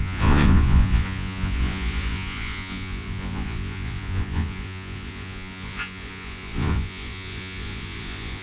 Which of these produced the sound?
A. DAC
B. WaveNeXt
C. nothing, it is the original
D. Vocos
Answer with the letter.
D